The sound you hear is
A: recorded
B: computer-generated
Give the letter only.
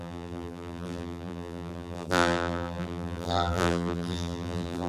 B